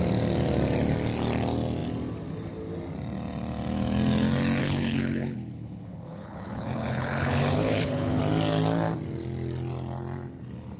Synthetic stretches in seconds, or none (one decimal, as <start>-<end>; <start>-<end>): 4.6-8.2